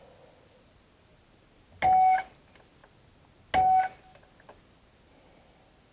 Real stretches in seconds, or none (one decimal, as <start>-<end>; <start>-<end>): 0.0-5.9